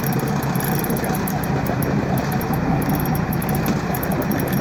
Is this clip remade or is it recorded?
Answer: remade